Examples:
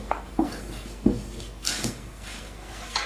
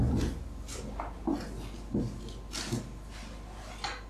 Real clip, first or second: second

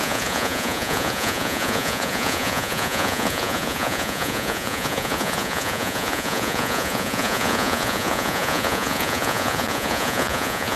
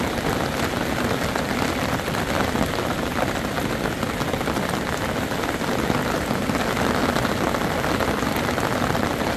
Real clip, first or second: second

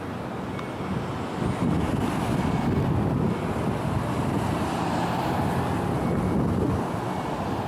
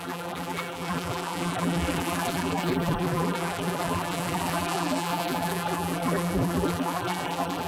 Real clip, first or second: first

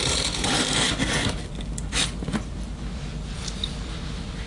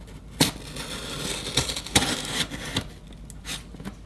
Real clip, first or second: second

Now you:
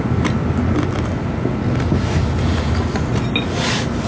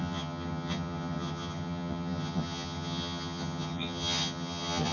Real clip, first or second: first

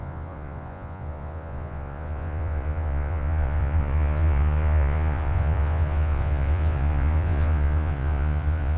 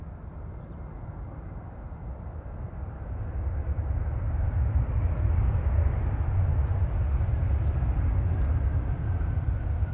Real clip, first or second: second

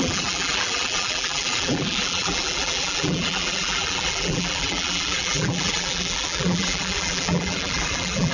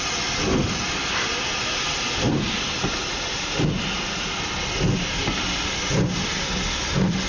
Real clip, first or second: second